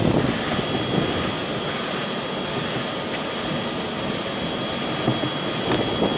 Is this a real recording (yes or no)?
yes